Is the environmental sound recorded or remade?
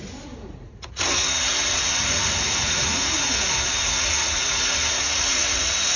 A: remade